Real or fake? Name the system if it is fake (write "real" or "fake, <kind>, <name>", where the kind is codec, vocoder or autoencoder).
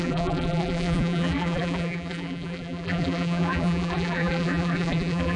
fake, vocoder, BigVGAN v2